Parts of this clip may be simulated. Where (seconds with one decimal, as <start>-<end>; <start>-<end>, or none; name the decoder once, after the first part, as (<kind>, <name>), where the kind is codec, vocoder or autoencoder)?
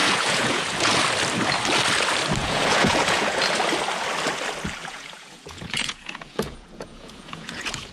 0.0-1.0 (vocoder, Vocos); 2.4-3.4; 4.8-7.9